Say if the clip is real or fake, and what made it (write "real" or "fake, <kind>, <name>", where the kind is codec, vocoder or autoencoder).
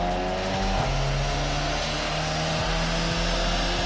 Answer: real